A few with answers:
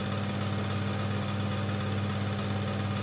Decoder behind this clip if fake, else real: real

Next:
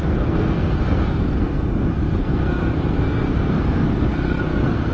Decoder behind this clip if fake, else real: fake, codec, SNAC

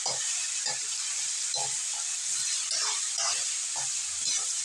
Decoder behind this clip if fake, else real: real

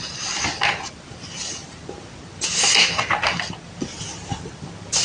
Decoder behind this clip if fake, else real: real